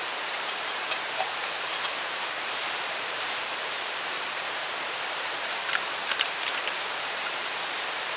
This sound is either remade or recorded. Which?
remade